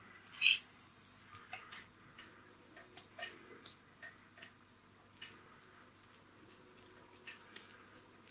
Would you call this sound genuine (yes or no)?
yes